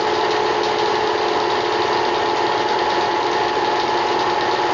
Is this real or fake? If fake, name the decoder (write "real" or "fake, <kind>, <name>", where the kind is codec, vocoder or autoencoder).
real